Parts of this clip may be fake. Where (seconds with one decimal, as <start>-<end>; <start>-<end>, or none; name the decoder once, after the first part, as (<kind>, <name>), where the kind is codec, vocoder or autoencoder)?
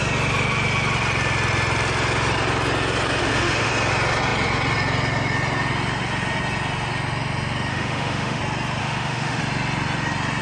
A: 3.2-3.7 (autoencoder, DAC-VAE); 7.7-8.4; 8.8-9.4